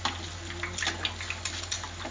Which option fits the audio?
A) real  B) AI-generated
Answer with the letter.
A